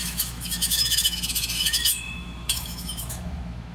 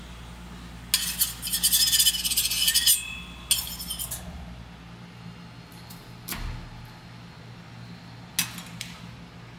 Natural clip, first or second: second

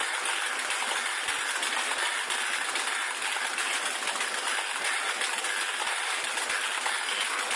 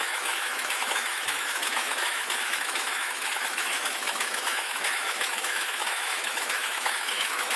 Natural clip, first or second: first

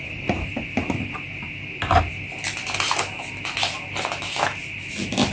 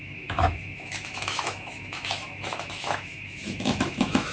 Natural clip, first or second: first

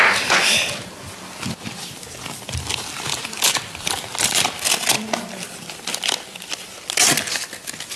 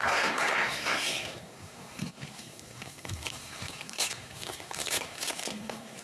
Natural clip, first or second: first